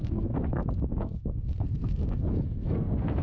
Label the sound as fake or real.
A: fake